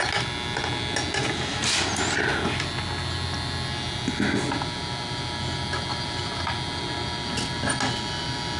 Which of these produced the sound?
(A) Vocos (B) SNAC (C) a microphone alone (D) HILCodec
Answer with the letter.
C